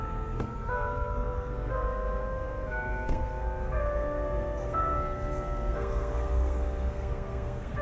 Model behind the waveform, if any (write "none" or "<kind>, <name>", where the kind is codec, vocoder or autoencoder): codec, SNAC